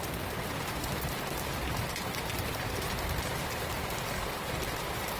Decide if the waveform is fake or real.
real